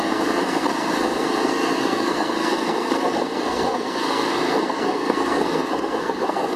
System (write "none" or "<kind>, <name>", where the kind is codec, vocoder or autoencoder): codec, SNAC